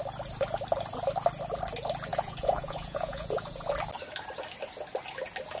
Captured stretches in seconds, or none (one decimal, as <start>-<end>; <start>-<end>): 0.0-2.1; 3.7-5.6